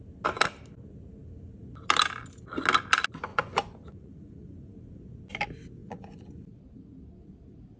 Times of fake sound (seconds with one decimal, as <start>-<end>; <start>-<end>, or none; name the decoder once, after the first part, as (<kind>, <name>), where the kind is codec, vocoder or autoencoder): 3.3-4.8 (vocoder, Vocos); 5.8-6.4